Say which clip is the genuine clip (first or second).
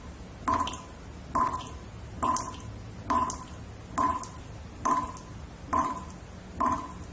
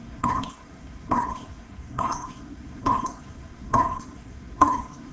first